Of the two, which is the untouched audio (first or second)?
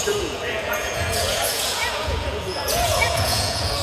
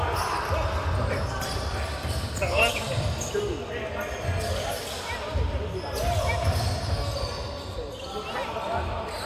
second